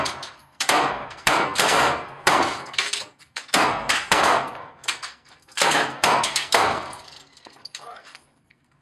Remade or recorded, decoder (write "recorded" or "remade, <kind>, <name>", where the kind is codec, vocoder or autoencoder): remade, codec, SNAC